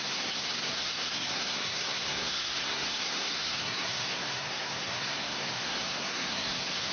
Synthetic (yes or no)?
yes